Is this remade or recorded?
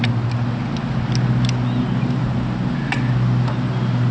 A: recorded